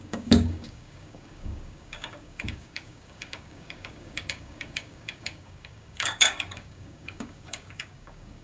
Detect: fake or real fake